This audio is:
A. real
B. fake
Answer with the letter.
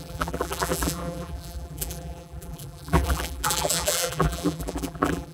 B